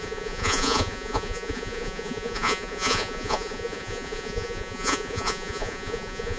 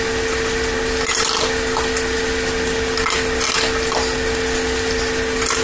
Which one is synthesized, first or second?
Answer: first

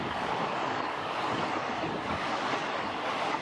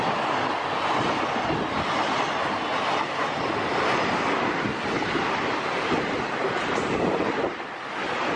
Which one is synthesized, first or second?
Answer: first